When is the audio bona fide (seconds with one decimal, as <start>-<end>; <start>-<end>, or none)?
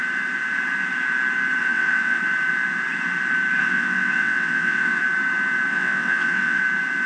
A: 0.0-1.6; 2.2-3.6; 5.0-5.7; 6.6-7.1